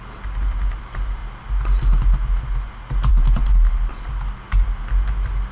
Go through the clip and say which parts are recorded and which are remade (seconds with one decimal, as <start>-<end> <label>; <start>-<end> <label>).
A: 0.0-5.5 recorded